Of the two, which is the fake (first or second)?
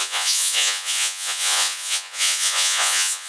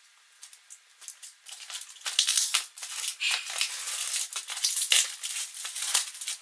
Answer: first